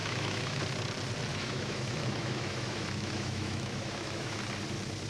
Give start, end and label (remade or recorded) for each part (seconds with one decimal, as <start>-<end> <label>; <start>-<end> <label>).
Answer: 0.0-0.6 remade; 0.6-1.3 recorded; 1.3-4.4 remade; 4.4-5.1 recorded